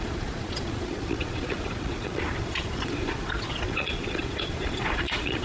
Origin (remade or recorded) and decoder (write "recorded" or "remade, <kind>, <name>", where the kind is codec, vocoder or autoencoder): remade, vocoder, Vocos